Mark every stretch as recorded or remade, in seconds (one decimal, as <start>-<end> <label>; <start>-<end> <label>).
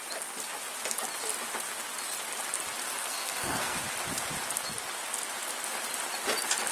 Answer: 0.0-3.0 recorded; 3.0-3.8 remade; 3.8-6.7 recorded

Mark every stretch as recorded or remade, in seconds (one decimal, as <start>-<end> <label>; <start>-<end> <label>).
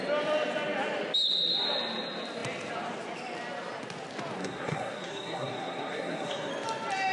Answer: 0.0-4.4 recorded; 4.4-6.5 remade; 6.5-7.1 recorded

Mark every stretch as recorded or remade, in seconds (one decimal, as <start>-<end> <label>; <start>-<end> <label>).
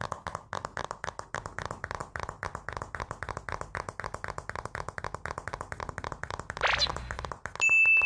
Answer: 0.0-8.1 recorded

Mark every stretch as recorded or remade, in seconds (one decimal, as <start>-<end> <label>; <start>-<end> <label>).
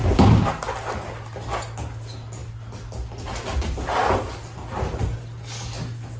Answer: 0.0-6.2 recorded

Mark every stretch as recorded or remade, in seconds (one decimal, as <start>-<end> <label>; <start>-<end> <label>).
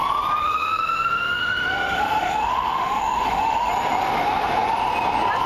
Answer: 0.0-0.4 recorded; 0.4-3.7 remade; 3.7-5.5 recorded